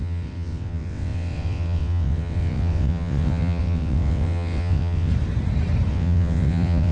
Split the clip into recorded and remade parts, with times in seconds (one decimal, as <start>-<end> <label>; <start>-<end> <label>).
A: 0.0-5.1 remade; 5.1-5.9 recorded; 5.9-6.9 remade